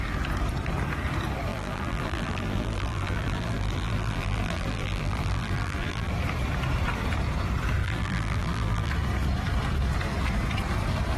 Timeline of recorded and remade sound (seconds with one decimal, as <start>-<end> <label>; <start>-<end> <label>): 0.0-1.5 recorded; 1.5-6.1 remade; 6.1-7.8 recorded; 7.8-8.9 remade; 8.9-11.2 recorded